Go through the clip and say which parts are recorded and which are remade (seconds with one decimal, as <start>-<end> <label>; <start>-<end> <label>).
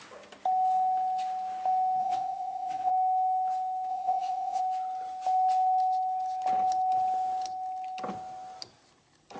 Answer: 0.0-2.0 recorded; 2.0-2.9 remade; 2.9-3.9 recorded; 3.9-4.6 remade; 4.6-9.4 recorded